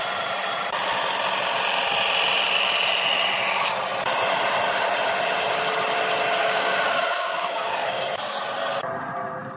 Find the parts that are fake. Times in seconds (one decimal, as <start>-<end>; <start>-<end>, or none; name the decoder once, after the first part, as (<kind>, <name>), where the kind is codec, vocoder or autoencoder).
6.4-8.0 (codec, DAC)